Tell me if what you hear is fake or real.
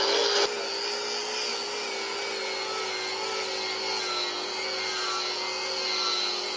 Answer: real